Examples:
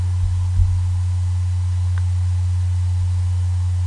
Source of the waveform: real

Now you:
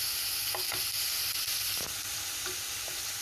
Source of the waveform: real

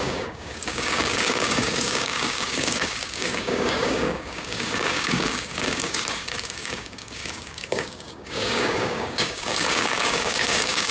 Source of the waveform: fake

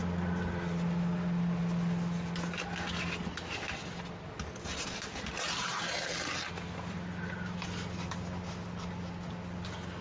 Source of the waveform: real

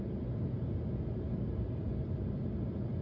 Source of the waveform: real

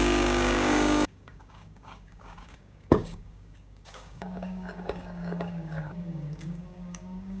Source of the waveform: fake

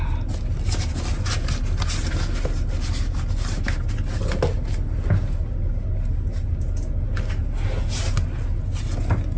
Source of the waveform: real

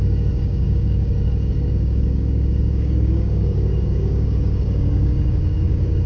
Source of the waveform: fake